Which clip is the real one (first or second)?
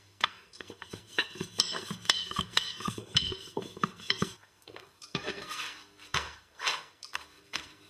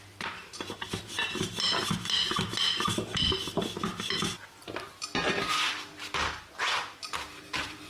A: second